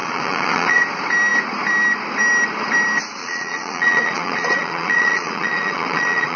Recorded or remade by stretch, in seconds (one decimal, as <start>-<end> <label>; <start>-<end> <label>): 0.0-0.8 remade; 0.8-3.2 recorded; 3.2-6.4 remade